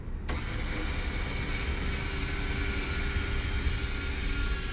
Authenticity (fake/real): real